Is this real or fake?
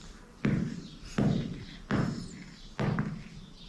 real